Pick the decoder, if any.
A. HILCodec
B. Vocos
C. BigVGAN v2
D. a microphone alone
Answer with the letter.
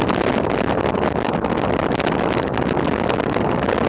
D